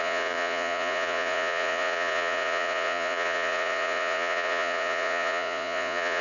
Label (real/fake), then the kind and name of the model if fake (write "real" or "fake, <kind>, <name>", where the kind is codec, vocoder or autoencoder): fake, vocoder, Vocos